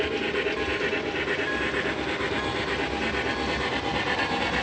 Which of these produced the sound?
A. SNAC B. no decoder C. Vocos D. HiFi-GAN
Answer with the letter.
B